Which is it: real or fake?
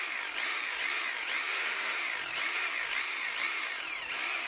fake